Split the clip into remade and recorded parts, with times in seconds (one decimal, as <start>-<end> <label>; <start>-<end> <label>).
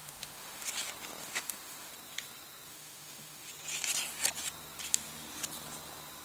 0.0-0.7 remade; 0.7-1.2 recorded; 1.2-1.9 remade; 1.9-2.7 recorded; 2.7-3.5 remade; 3.5-6.2 recorded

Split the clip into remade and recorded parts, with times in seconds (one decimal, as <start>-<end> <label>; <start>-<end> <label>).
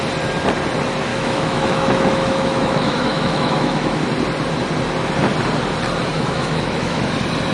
0.0-1.1 recorded; 1.1-4.0 remade; 4.0-6.1 recorded; 6.1-7.0 remade; 7.0-7.5 recorded